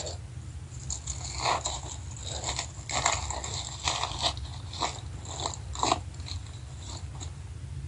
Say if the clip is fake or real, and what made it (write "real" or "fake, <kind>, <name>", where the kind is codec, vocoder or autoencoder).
real